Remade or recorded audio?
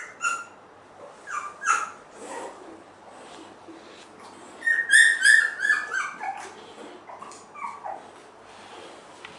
recorded